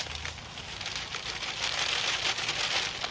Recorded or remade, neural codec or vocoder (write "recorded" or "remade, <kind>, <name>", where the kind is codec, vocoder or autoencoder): recorded